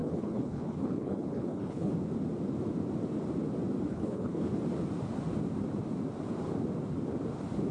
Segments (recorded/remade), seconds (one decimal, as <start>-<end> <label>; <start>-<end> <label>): 0.0-1.9 remade; 1.9-3.9 recorded; 3.9-4.6 remade; 4.6-7.7 recorded